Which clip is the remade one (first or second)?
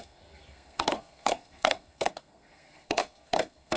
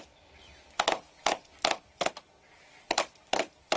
first